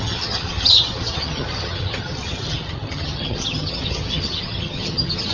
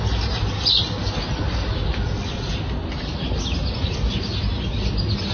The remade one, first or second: first